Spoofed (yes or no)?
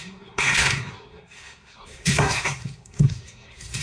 yes